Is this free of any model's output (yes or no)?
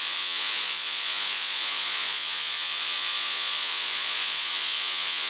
no